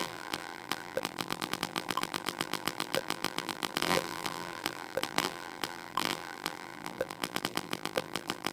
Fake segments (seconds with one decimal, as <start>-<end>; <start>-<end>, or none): 0.0-8.5